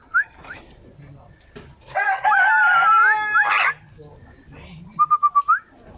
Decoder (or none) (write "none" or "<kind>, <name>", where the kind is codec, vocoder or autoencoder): none